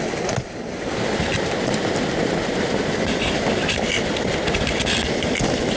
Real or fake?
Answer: real